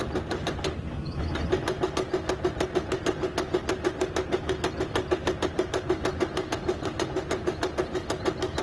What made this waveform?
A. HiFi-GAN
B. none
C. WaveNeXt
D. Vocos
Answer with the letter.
B